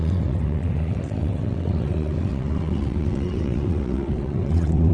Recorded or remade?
remade